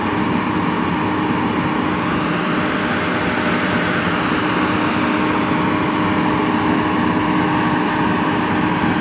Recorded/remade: recorded